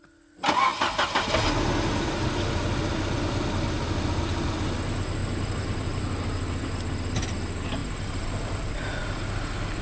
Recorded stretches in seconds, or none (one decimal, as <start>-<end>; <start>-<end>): 0.0-5.2; 6.7-9.8